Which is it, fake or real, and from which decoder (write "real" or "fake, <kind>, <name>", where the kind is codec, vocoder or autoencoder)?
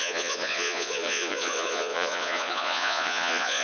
fake, vocoder, Vocos